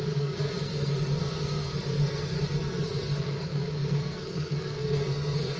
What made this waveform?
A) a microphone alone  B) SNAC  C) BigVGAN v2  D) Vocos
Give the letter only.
B